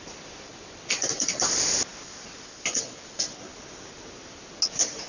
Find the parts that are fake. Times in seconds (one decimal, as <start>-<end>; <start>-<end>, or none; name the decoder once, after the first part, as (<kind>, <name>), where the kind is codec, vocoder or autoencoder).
none